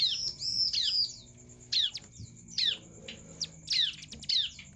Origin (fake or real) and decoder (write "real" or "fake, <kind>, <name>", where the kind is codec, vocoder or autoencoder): real